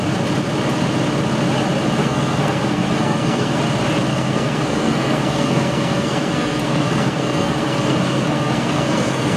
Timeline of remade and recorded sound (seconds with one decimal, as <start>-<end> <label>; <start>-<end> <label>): 0.0-2.0 recorded; 2.0-3.6 remade; 3.6-4.1 recorded; 4.1-9.4 remade